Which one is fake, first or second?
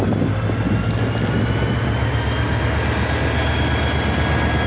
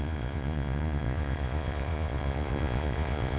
second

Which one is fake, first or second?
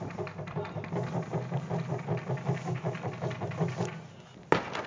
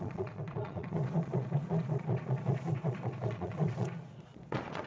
second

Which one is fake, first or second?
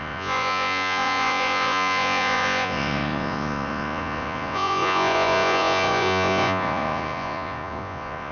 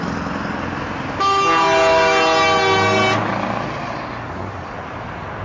first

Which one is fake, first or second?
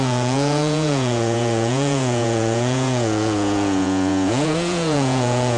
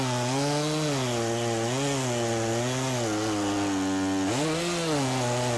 first